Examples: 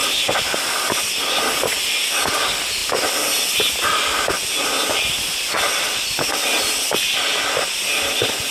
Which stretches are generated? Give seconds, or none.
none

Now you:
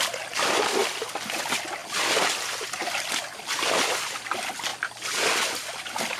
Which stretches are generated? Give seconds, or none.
0.8-1.4 (vocoder, BigVGAN v2); 4.7-6.2

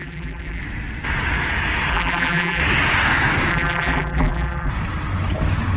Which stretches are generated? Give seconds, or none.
0.0-0.6 (vocoder, BigVGAN v2); 1.9-2.6; 3.5-4.7